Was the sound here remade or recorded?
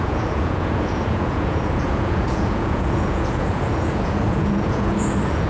remade